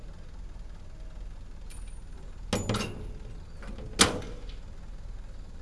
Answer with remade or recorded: recorded